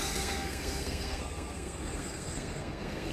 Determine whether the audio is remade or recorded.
remade